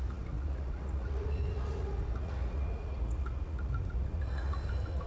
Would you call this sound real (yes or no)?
no